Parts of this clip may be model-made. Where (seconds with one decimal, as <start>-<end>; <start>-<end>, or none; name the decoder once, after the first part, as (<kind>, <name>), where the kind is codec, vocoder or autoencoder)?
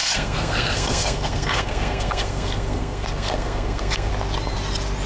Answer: 0.0-4.1 (codec, SNAC)